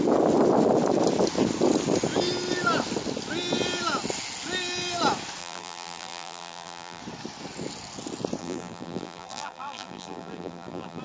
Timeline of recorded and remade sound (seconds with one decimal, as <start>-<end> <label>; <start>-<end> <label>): 0.0-5.4 recorded; 5.4-7.0 remade; 7.0-8.4 recorded; 8.4-11.0 remade